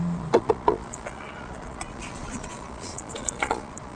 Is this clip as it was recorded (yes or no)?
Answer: no